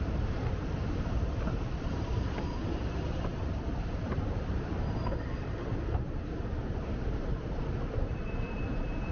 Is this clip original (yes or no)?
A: no